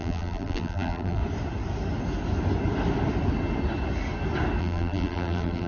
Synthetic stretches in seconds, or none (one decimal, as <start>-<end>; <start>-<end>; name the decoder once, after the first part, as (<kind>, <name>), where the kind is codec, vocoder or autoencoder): 0.0-1.2 (vocoder, BigVGAN v2); 4.6-5.7